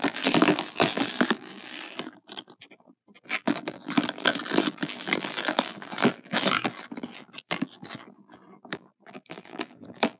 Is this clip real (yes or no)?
no